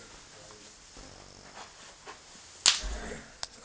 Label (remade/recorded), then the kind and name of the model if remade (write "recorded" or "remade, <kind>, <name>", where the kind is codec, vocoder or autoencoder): recorded